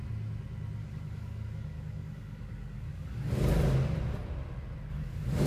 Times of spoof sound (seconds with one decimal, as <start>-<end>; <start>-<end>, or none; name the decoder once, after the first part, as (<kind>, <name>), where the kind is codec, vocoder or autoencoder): 0.8-3.3 (codec, DAC); 4.9-5.5